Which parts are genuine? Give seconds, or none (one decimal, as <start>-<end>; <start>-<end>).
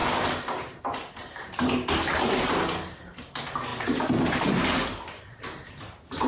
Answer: 0.0-3.7; 5.8-6.3